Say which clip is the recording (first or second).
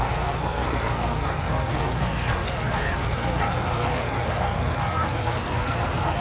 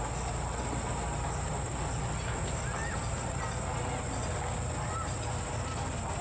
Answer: second